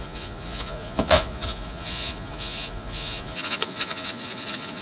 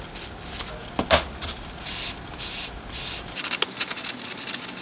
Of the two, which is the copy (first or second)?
first